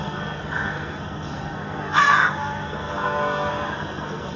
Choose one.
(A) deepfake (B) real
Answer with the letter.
A